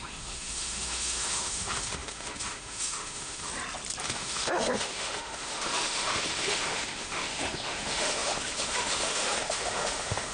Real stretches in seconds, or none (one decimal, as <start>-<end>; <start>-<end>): 3.5-4.0